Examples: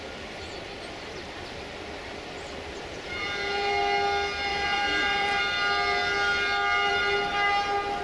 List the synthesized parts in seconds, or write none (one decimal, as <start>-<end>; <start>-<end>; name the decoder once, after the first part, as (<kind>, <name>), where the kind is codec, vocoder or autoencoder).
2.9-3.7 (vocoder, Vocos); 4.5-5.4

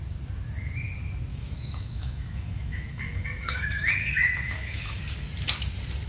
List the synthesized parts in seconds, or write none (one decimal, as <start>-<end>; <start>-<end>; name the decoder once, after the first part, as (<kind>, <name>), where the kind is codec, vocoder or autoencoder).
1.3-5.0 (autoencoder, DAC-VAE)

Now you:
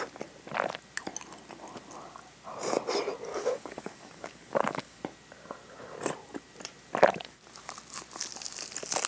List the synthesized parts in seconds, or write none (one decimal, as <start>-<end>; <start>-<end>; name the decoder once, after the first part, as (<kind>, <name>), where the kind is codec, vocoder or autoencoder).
3.3-5.0 (codec, DAC)

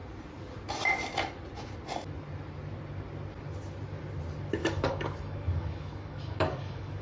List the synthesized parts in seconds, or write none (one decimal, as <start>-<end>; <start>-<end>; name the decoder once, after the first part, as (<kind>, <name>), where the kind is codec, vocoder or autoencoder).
4.6-7.0 (codec, DAC)